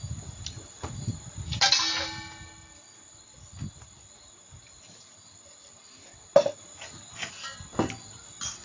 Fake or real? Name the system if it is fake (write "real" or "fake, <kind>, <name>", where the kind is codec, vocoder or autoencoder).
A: real